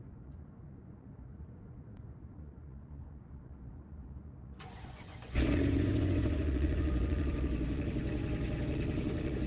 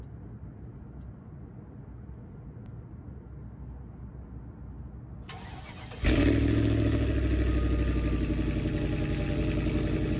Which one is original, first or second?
second